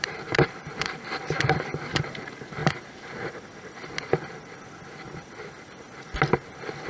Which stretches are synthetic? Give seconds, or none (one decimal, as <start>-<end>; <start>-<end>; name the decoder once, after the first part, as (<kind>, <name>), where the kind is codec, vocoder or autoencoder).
0.0-2.6 (vocoder, BigVGAN v2)